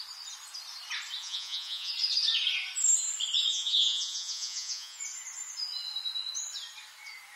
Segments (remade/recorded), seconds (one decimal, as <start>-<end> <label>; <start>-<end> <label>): 0.0-1.2 recorded; 1.2-1.9 remade; 1.9-3.5 recorded; 3.5-5.0 remade; 5.0-7.4 recorded

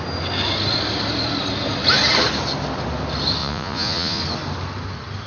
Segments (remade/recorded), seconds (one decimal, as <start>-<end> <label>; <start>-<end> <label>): 0.0-3.4 recorded; 3.4-4.2 remade; 4.2-5.3 recorded

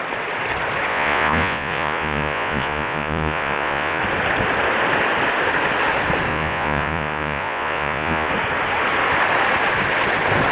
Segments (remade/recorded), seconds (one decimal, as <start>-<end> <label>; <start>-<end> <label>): 0.0-0.9 recorded; 0.9-4.0 remade; 4.0-6.3 recorded; 6.3-8.3 remade; 8.3-10.5 recorded

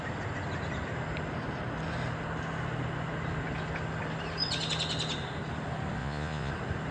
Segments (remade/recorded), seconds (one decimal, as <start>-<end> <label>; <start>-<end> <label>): 0.0-6.0 recorded; 6.0-6.5 remade; 6.5-6.9 recorded